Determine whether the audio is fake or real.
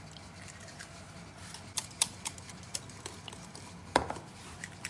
real